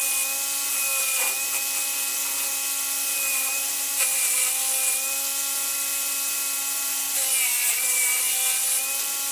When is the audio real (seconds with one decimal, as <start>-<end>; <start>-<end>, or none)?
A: 0.0-3.3; 4.0-9.3